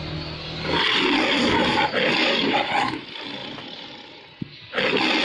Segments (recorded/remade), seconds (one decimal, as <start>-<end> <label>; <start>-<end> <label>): 0.0-5.2 recorded